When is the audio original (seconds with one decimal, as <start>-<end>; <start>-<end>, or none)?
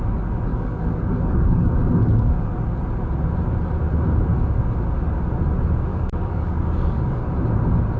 0.0-0.5; 2.5-5.9; 7.2-8.0